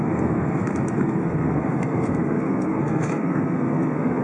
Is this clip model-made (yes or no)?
yes